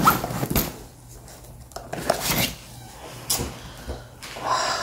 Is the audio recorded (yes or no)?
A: yes